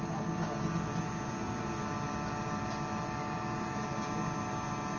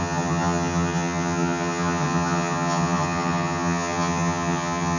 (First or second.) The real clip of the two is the first